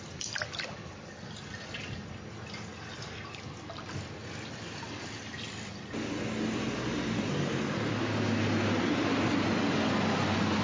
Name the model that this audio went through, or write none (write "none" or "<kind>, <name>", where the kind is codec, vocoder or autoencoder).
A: none